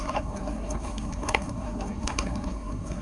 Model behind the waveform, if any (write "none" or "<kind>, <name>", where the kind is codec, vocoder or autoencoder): codec, SNAC